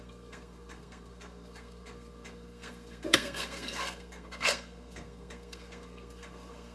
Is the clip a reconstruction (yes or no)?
yes